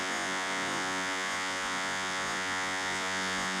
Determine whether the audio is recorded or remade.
remade